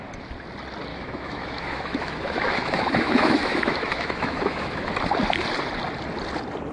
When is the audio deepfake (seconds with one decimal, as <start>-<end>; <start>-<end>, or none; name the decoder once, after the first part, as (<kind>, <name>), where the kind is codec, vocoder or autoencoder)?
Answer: 0.9-4.9 (autoencoder, DAC-VAE)